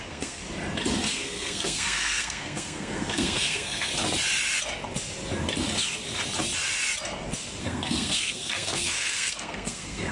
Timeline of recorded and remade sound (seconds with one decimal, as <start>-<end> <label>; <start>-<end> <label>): 0.0-0.4 remade; 0.4-1.1 recorded; 1.1-3.9 remade; 3.9-7.6 recorded; 7.6-10.1 remade